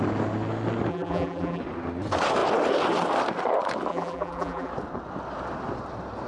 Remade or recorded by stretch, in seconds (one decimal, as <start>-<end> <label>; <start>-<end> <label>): 0.0-0.9 recorded; 0.9-1.6 remade; 1.6-3.9 recorded; 3.9-4.7 remade; 4.7-6.3 recorded